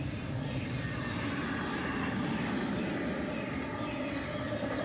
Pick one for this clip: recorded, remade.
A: recorded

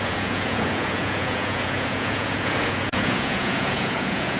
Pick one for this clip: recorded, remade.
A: remade